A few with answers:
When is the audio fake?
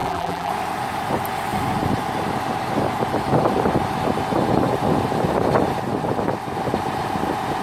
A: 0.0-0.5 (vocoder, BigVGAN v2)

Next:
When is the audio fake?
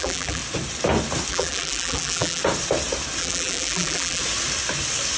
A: 0.0-0.4 (vocoder, BigVGAN v2); 1.3-2.4; 3.2-4.2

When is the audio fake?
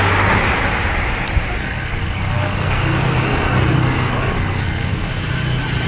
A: 1.6-5.1 (codec, SNAC)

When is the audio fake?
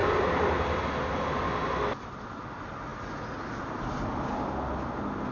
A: none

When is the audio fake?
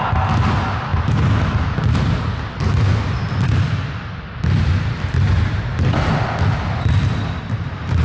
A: none